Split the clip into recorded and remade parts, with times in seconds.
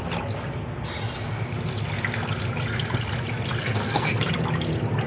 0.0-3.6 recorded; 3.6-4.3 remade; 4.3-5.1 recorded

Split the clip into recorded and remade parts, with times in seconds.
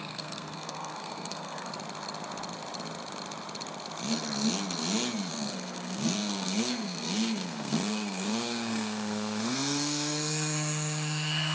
0.0-1.7 remade; 1.7-5.3 recorded; 5.3-11.5 remade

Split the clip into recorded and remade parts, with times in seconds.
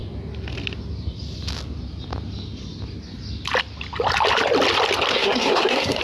0.0-5.1 recorded; 5.1-6.0 remade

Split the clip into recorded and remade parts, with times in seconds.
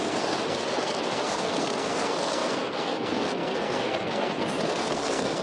0.0-5.4 remade